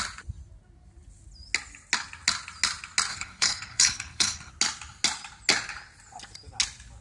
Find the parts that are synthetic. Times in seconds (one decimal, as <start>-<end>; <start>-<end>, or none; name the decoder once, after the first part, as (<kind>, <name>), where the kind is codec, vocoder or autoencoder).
3.1-4.5 (codec, HILCodec)